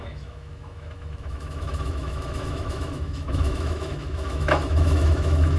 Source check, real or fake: fake